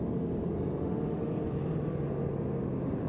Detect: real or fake real